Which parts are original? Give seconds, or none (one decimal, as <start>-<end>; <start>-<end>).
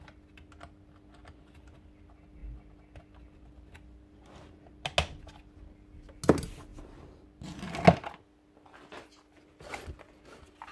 0.0-10.7